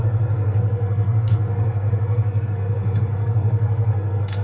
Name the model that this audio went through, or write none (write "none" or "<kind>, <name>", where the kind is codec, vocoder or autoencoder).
codec, SNAC